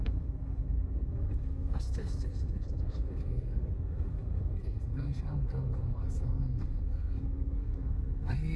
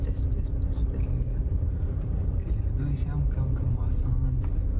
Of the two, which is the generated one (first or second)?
first